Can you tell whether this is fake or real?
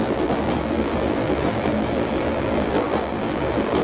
fake